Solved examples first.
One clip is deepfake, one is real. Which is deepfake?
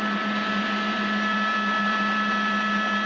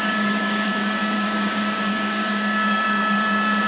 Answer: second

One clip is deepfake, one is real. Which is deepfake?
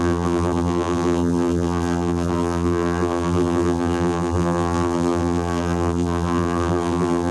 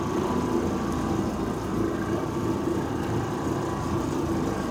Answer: first